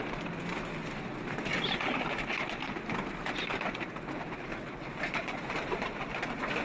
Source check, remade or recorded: recorded